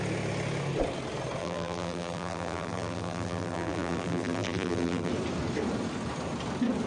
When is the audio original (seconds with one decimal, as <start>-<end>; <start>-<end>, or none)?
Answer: 0.0-1.4; 5.1-6.9